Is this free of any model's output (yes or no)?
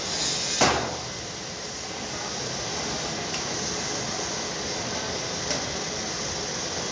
yes